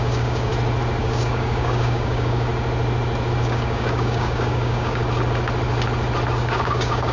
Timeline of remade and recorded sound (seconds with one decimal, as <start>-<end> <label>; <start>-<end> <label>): 0.0-0.5 remade; 0.5-1.0 recorded; 1.0-2.5 remade; 2.5-3.3 recorded; 3.3-5.0 remade; 5.0-6.3 recorded; 6.3-7.1 remade